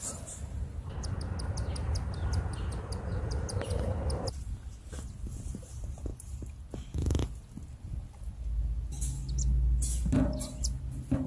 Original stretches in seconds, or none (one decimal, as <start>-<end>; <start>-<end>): 0.0-11.3